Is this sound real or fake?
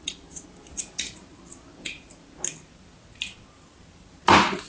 real